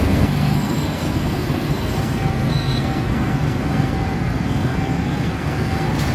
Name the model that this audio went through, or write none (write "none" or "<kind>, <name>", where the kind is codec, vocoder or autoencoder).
codec, SNAC